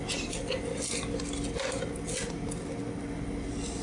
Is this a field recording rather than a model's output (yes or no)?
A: yes